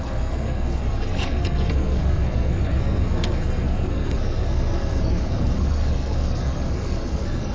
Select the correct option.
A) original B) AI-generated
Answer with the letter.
B